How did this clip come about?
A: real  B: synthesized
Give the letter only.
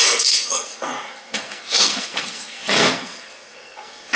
B